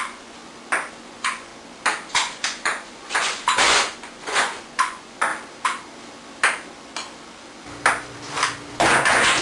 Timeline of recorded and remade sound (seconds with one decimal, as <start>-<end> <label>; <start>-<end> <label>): 0.0-0.4 remade; 0.4-1.0 recorded; 1.0-1.5 remade; 1.5-2.1 recorded; 2.1-5.3 remade; 5.3-8.7 recorded; 8.7-9.4 remade